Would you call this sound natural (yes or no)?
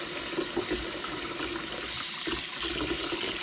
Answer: yes